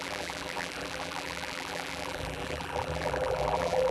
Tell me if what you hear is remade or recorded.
remade